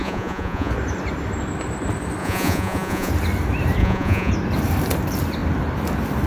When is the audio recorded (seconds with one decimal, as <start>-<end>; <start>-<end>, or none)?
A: 0.7-2.2; 3.1-3.8; 4.3-6.3